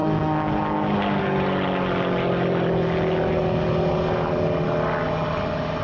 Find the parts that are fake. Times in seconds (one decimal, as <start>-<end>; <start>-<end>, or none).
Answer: none